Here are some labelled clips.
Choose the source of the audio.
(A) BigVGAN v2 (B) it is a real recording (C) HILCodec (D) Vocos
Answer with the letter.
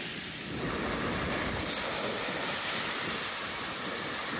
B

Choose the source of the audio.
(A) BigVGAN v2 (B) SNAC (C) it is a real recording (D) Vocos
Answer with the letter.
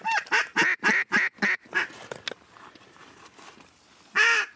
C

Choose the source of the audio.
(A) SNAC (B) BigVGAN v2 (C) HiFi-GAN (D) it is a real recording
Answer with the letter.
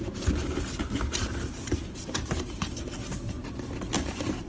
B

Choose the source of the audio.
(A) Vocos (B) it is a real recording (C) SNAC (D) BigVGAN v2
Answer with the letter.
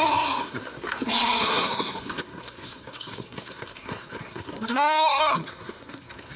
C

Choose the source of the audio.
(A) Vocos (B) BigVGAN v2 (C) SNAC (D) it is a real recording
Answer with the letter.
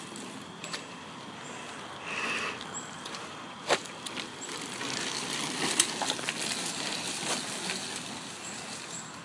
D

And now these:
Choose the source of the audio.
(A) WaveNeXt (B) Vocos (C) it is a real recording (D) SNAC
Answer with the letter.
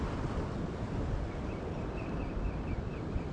C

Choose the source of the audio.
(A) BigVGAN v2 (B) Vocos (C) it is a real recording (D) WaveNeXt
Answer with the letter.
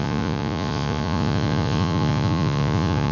B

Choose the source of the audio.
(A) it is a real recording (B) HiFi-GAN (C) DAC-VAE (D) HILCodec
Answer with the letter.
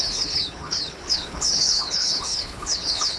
D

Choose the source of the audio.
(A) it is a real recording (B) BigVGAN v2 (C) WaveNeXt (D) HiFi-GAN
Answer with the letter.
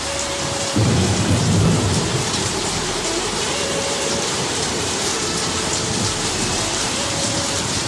B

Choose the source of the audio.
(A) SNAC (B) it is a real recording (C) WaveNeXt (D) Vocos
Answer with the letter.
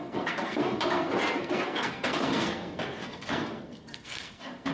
A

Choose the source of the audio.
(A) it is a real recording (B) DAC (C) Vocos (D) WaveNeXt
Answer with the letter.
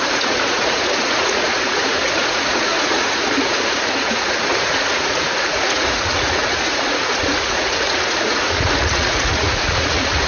C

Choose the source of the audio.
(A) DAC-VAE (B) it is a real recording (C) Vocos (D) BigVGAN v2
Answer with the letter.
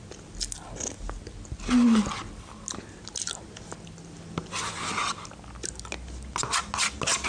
B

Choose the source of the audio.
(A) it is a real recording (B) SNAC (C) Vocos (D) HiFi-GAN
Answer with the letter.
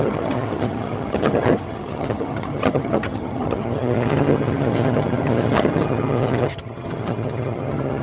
D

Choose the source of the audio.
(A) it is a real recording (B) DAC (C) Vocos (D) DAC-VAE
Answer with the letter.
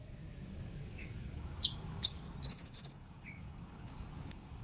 B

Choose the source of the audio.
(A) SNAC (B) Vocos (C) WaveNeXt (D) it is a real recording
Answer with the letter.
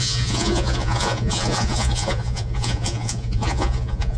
B